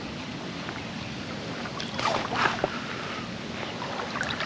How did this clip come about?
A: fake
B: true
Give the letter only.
B